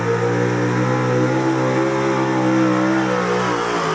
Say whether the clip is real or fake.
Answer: real